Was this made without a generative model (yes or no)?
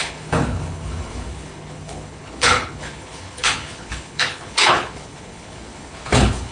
no